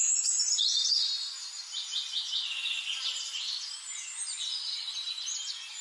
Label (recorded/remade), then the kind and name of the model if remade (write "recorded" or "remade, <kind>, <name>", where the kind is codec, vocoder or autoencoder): recorded